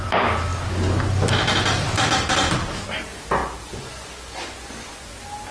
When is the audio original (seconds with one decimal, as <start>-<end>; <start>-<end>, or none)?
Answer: 0.0-3.4; 5.1-5.5